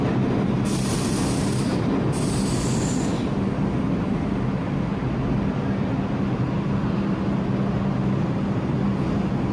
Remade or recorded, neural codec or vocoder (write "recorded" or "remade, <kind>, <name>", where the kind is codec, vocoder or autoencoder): recorded